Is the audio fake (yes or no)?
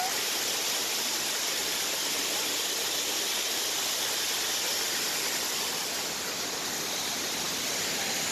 no